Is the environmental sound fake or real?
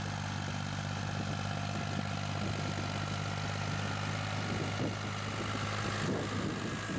real